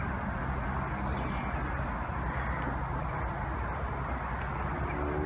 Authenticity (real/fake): real